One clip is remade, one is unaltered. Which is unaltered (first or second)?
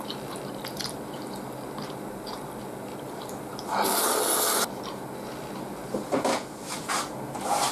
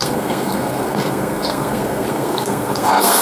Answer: first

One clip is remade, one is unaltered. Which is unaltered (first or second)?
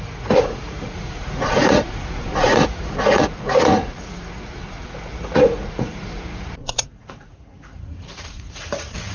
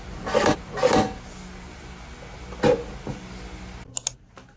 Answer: second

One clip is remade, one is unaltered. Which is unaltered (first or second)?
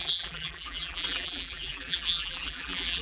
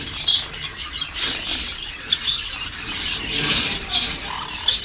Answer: second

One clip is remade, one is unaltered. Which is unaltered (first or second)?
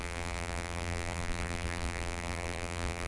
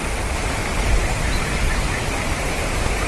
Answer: second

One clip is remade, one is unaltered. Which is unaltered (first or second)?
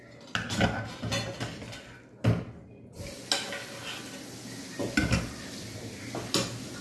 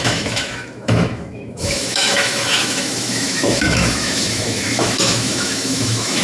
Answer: first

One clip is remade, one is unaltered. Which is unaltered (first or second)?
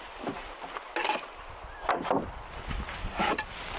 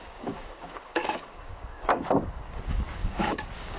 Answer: first